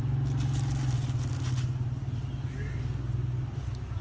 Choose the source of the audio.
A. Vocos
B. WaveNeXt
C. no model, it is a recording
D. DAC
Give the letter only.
C